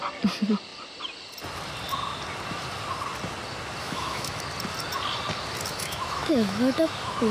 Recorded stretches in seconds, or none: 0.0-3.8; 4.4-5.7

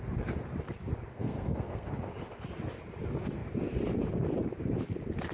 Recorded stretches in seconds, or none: 0.0-1.1; 1.9-5.3

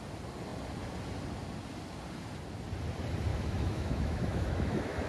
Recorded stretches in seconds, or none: 0.0-3.3